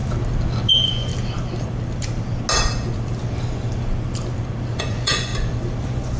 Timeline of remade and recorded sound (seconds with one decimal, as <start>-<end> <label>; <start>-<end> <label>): 0.0-0.7 recorded; 0.7-1.1 remade; 1.1-4.8 recorded; 4.8-5.3 remade; 5.3-5.8 recorded; 5.8-6.2 remade